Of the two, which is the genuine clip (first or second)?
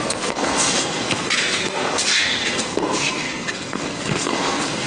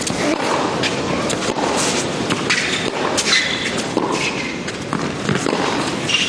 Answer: second